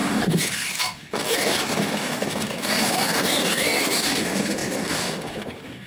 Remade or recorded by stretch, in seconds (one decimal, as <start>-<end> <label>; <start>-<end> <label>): 0.0-5.9 remade